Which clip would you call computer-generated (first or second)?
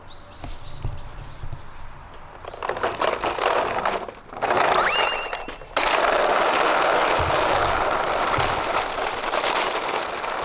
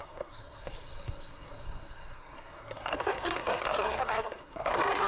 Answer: second